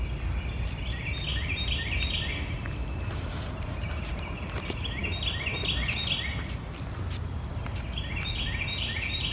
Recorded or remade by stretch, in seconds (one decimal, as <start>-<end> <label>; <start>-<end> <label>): 0.0-1.3 recorded; 1.3-4.2 remade; 4.2-9.3 recorded